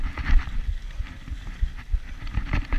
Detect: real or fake real